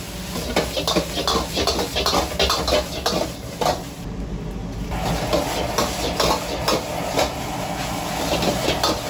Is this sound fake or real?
real